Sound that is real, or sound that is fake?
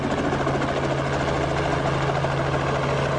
real